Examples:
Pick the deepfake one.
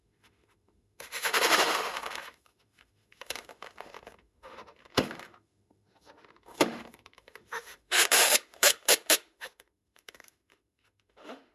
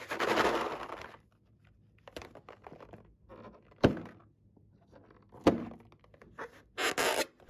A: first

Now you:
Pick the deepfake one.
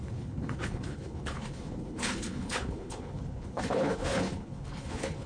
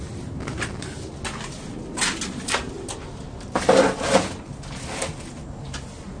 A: first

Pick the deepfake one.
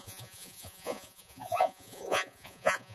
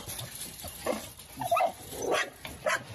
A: first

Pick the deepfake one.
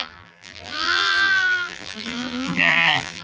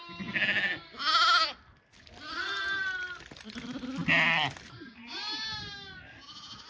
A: first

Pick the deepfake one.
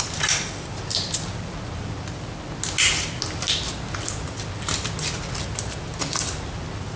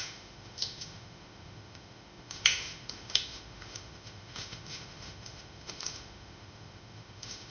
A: second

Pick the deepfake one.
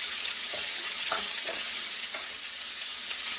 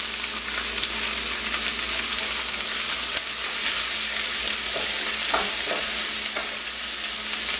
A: first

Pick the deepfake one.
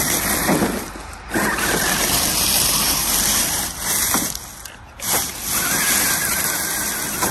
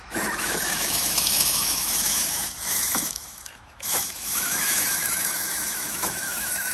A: second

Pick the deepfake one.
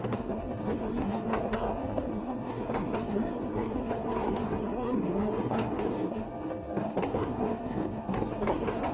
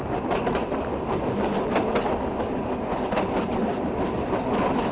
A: first